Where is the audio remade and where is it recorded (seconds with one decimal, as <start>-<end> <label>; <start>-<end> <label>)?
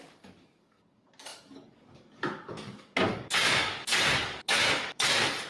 0.0-5.5 remade